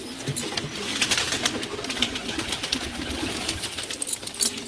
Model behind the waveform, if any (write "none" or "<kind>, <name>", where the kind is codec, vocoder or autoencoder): none